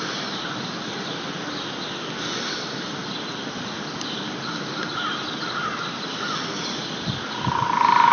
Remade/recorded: recorded